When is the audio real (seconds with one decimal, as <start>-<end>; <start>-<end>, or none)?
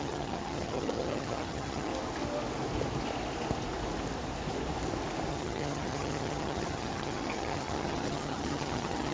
1.9-5.3